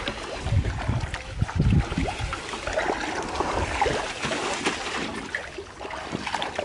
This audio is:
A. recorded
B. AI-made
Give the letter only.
A